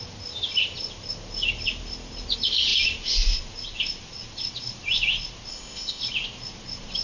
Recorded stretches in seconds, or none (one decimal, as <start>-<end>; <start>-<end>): 0.0-5.5; 6.0-7.0